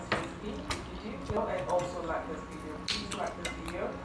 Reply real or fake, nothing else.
real